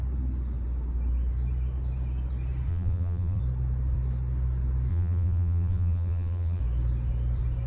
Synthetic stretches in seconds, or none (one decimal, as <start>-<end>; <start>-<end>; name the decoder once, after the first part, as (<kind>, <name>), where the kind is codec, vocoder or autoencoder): 2.7-3.4 (vocoder, BigVGAN v2); 4.9-6.6